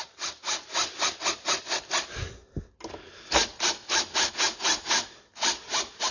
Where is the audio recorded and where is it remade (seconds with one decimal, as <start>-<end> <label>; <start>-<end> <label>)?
0.0-6.1 recorded